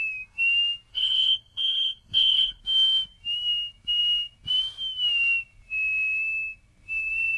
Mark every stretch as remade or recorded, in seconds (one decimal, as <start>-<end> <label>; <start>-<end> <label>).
0.0-0.9 recorded; 0.9-2.6 remade; 2.6-7.4 recorded